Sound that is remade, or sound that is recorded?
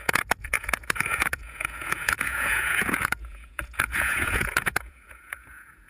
remade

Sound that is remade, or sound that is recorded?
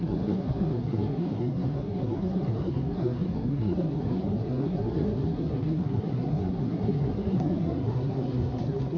remade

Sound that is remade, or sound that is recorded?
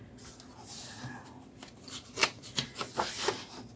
recorded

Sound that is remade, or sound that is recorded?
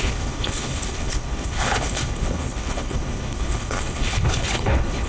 remade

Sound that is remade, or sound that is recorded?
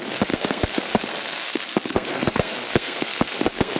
remade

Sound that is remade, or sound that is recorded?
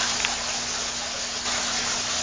recorded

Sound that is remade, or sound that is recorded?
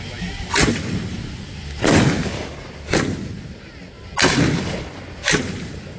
recorded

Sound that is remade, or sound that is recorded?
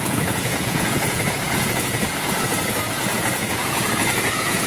remade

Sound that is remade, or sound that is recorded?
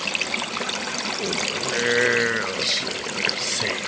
recorded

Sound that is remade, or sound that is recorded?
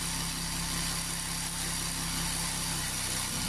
recorded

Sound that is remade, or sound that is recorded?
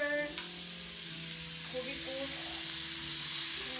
recorded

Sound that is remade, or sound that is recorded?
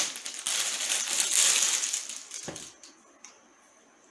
recorded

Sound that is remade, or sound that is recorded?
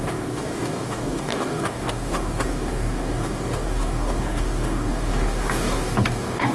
remade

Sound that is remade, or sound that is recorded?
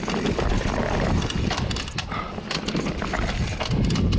recorded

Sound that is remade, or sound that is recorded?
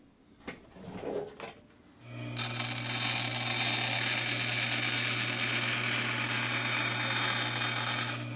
recorded